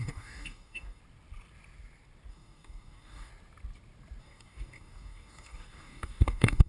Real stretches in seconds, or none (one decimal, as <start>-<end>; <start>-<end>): 1.0-2.3; 3.3-4.2